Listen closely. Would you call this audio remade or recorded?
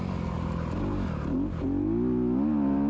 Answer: recorded